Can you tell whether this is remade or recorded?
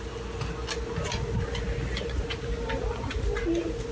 recorded